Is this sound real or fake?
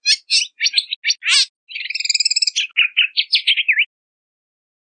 real